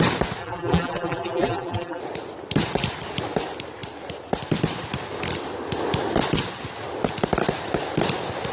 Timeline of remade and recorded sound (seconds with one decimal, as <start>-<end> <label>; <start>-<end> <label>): 0.0-0.4 recorded; 0.4-2.0 remade; 2.0-8.5 recorded

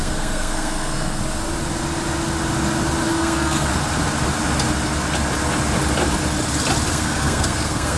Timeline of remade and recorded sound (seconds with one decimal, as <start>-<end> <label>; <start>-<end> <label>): 0.0-1.2 remade; 1.2-3.1 recorded; 3.1-3.7 remade; 3.7-6.9 recorded; 6.9-8.0 remade

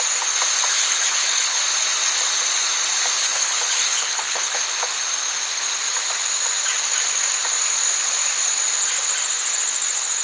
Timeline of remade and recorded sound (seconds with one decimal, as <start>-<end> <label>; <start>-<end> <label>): 0.0-0.7 recorded; 0.7-1.6 remade; 1.6-3.2 recorded; 3.2-4.6 remade; 4.6-10.2 recorded